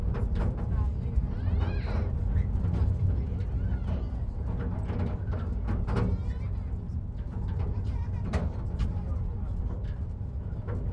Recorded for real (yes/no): yes